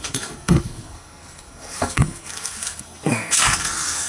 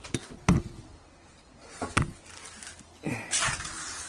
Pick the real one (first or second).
second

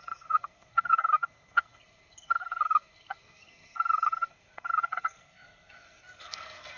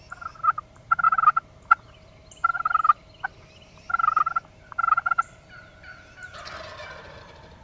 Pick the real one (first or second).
second